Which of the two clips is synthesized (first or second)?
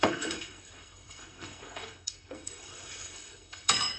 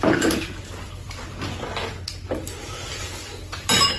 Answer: first